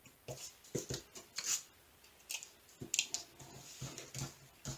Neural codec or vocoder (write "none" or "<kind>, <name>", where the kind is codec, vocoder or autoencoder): none